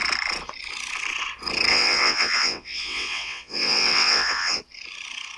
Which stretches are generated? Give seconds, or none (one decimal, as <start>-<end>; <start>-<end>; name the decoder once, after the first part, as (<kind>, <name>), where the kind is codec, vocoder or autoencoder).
1.7-4.6 (vocoder, WaveNeXt)